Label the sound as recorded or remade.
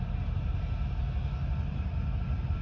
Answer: recorded